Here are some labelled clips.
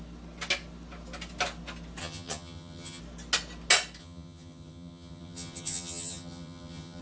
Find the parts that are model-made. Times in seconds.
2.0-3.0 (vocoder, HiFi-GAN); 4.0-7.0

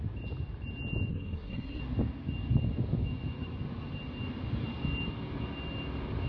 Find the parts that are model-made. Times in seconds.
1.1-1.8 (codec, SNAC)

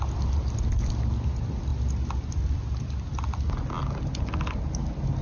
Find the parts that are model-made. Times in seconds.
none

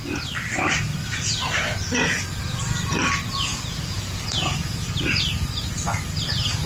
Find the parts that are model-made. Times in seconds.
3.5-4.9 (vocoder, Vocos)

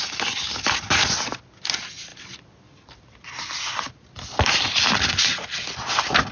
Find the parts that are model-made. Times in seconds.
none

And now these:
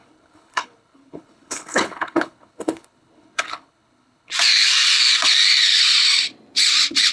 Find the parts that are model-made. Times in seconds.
0.0-4.3 (codec, HILCodec)